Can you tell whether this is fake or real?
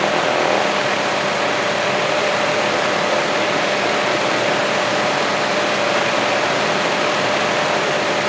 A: real